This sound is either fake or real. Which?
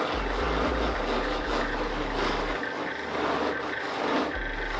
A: real